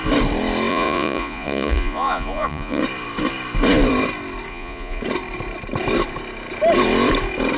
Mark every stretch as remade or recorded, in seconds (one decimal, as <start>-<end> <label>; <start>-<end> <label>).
0.0-0.7 recorded; 0.7-2.8 remade; 2.8-4.5 recorded; 4.5-5.0 remade; 5.0-7.6 recorded